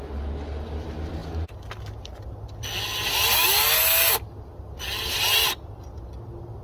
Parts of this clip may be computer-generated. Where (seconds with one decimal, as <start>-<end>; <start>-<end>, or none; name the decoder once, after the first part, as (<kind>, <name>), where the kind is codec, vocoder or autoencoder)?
none

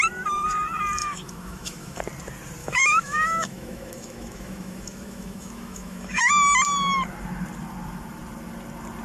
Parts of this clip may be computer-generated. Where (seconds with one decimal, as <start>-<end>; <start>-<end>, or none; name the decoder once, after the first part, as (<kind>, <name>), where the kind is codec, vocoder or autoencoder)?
1.0-2.0 (autoencoder, DAC-VAE); 2.6-6.3

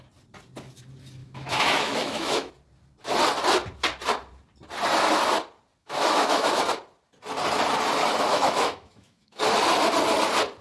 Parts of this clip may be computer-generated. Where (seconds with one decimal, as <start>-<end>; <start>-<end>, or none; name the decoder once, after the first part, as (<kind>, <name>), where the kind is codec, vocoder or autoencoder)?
1.2-2.5 (autoencoder, DAC-VAE); 5.8-6.6; 8.3-9.4

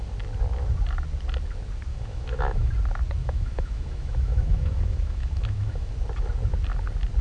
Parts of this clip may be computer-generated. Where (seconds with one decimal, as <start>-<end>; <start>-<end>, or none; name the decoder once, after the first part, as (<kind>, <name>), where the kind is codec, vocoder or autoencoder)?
1.9-2.7 (autoencoder, DAC-VAE); 3.2-5.9